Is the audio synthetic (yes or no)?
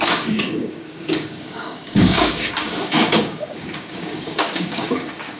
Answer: yes